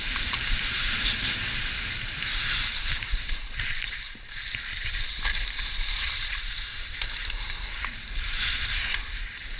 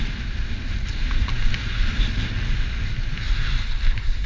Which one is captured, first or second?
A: second